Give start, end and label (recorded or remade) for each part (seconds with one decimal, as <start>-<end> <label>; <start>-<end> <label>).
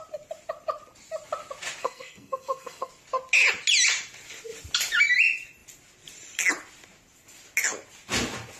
0.0-1.8 recorded; 1.8-2.9 remade; 2.9-8.6 recorded